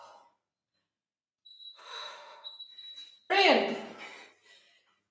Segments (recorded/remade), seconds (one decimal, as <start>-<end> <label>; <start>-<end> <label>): 0.0-1.5 recorded; 1.5-2.6 remade; 2.6-5.1 recorded